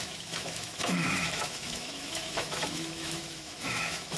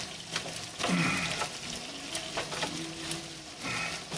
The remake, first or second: first